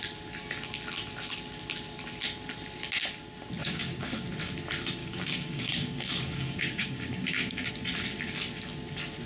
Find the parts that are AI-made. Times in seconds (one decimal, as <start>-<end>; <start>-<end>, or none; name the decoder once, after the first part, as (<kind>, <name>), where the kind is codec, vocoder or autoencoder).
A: 3.6-4.1 (codec, DAC); 5.0-7.7

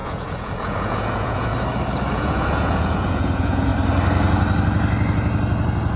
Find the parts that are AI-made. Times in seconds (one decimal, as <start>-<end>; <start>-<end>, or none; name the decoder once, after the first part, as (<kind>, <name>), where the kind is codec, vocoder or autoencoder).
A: 0.0-1.5 (vocoder, Vocos); 2.1-3.7

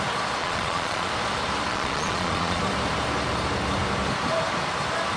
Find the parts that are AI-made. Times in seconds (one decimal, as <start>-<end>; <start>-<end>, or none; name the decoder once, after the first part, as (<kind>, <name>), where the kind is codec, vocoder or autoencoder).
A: 0.4-1.1 (vocoder, Vocos); 1.7-2.6

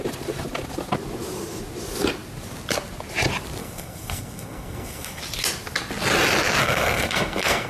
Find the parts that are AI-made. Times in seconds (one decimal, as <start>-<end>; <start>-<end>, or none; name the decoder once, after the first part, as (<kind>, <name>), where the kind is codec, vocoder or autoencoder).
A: 3.6-5.2 (codec, SNAC); 6.6-7.7

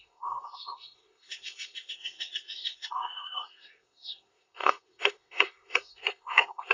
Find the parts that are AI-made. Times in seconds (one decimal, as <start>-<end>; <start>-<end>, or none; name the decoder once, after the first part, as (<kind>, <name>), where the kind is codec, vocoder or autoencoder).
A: 0.0-6.7 (codec, SNAC)